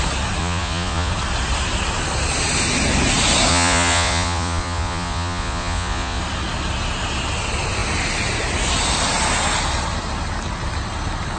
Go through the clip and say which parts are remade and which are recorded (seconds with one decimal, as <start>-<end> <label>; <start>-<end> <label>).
0.0-0.4 recorded; 0.4-1.1 remade; 1.1-3.5 recorded; 3.5-6.2 remade; 6.2-11.4 recorded